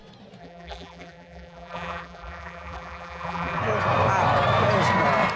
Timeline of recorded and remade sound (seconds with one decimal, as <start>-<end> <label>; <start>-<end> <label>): 0.0-0.4 recorded; 0.4-3.6 remade; 3.6-5.4 recorded